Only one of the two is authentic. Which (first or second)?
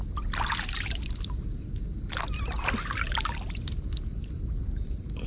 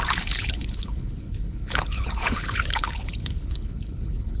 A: first